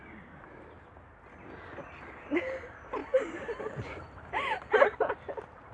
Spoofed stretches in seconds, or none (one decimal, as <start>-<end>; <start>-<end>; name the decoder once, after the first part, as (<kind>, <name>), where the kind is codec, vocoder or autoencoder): 2.0-5.7 (vocoder, BigVGAN v2)